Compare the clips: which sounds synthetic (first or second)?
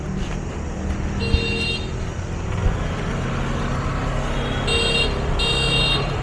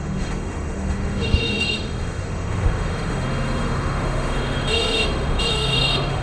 second